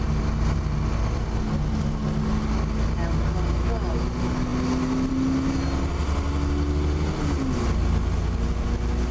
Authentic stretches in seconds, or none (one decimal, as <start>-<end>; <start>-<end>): 0.0-9.1